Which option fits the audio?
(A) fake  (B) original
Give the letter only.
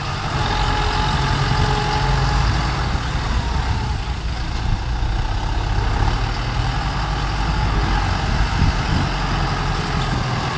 B